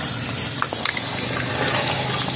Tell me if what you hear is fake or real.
real